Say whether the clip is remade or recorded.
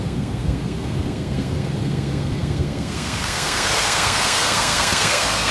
remade